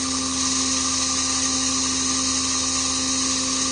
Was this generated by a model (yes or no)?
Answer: no